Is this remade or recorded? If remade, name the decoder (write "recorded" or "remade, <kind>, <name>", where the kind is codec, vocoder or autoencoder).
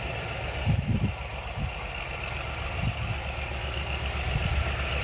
recorded